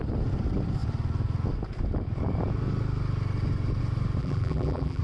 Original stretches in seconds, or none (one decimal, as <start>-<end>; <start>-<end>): 0.0-4.2